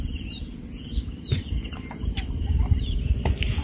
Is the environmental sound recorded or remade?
recorded